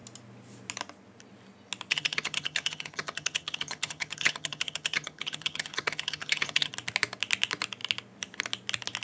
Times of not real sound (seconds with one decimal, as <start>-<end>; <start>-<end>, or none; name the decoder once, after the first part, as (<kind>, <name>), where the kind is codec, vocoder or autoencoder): 1.9-6.7 (vocoder, HiFi-GAN)